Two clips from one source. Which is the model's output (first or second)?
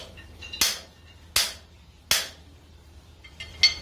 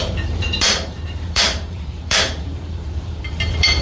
second